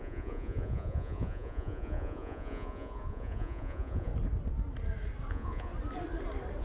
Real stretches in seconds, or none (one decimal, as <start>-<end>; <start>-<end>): 4.1-5.3; 5.7-6.6